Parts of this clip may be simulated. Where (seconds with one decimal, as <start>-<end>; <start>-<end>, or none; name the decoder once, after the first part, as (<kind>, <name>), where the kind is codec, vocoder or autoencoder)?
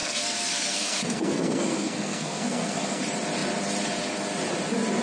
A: 0.0-3.0 (codec, SNAC)